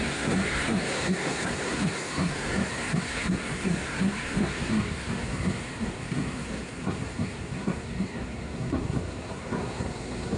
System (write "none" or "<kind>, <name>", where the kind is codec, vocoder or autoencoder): codec, SNAC